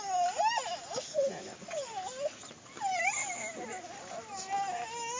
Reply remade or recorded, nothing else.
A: recorded